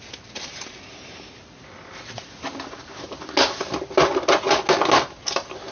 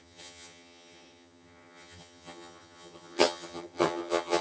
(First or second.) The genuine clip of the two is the first